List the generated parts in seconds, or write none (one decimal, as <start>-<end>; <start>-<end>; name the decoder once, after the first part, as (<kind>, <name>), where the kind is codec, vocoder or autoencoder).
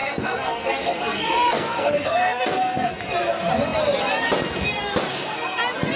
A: 0.0-2.9 (codec, SNAC); 5.1-5.6